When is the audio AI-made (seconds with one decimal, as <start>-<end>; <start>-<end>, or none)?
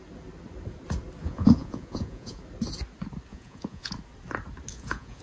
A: 1.2-2.4; 3.3-3.9; 4.7-5.2